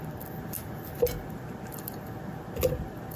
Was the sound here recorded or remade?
recorded